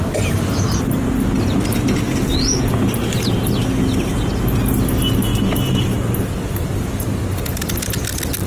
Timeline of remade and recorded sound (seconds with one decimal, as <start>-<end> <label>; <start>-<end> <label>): 0.0-8.5 recorded

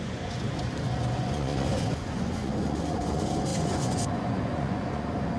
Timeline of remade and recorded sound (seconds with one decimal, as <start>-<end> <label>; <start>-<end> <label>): 0.0-5.4 remade

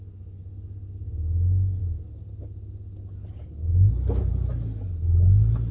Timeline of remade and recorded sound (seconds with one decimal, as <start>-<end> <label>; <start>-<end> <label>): 0.0-5.7 recorded

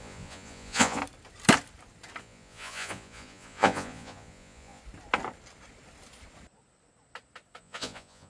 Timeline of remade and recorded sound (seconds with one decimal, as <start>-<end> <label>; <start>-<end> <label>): 0.0-1.0 remade; 1.0-2.2 recorded; 2.2-4.8 remade; 4.8-7.6 recorded; 7.6-8.3 remade

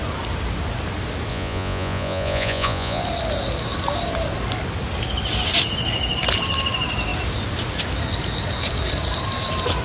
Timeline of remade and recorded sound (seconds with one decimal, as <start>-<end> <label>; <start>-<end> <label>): 0.0-1.3 recorded; 1.3-3.0 remade; 3.0-9.8 recorded

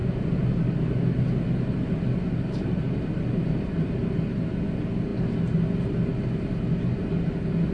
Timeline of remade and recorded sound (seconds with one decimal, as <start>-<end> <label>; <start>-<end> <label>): 0.0-7.7 recorded

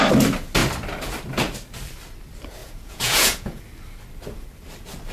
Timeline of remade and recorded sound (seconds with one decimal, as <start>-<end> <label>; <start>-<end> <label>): 0.0-2.6 recorded; 2.6-3.6 remade; 3.6-5.1 recorded